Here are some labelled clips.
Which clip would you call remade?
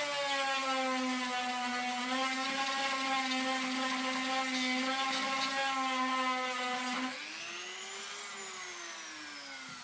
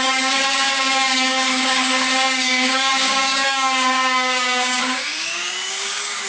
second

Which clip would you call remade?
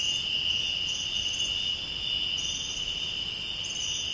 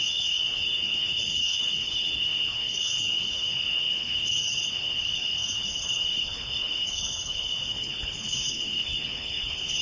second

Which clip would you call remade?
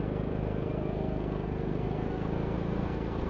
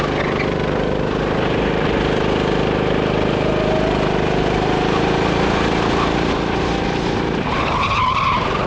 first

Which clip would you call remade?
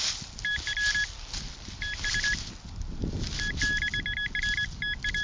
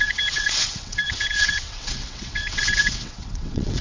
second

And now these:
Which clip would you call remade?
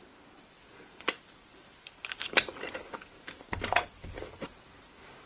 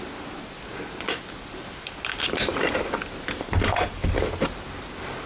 first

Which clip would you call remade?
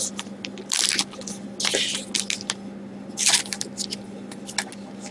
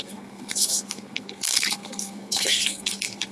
second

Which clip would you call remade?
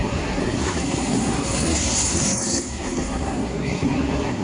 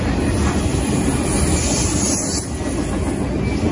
first